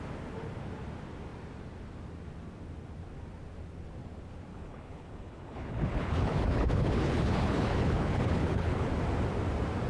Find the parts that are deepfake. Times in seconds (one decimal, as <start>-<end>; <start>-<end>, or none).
4.5-8.9